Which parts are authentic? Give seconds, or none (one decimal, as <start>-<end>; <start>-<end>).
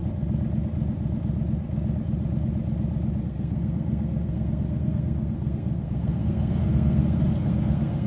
0.0-3.2